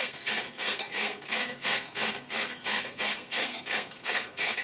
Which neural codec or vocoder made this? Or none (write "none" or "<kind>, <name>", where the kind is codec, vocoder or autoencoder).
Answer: codec, SNAC